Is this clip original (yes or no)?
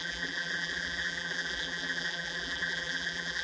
no